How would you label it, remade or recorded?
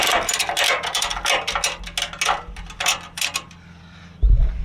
recorded